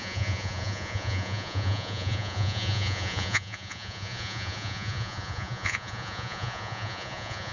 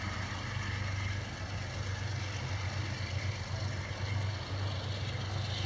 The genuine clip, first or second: second